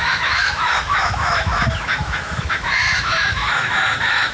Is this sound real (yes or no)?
no